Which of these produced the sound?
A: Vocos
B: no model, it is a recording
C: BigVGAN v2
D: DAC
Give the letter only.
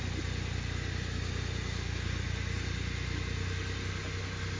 B